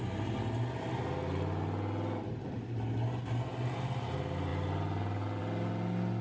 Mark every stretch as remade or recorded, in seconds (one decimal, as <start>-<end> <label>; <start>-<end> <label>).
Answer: 0.0-6.2 recorded